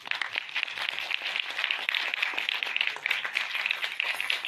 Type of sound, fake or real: real